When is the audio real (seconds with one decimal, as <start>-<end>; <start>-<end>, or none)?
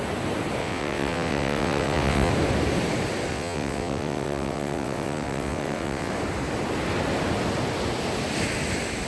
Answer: 0.0-0.6; 2.3-3.3; 6.1-9.1